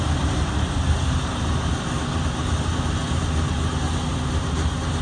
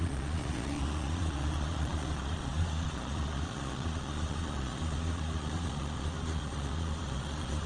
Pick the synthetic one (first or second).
second